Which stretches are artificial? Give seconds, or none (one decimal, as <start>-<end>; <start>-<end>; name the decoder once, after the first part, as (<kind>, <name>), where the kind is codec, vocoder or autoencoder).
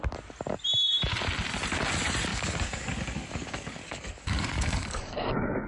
2.3-5.7 (codec, DAC)